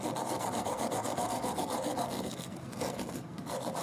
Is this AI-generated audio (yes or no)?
yes